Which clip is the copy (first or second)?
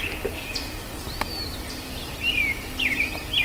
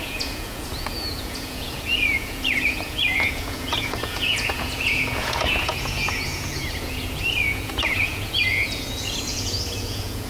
second